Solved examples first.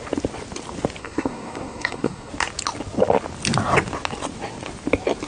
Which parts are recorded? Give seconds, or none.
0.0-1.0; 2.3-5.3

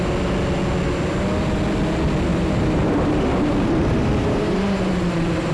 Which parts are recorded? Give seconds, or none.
0.0-2.3

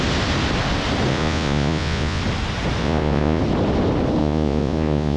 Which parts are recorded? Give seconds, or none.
0.0-1.1; 2.2-2.8; 3.4-4.2

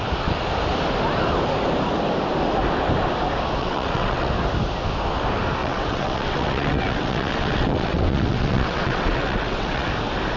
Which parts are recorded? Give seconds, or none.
0.0-3.6; 4.3-5.6; 9.9-10.4

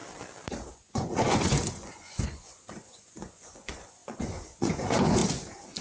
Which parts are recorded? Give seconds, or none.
0.0-0.7; 5.2-5.8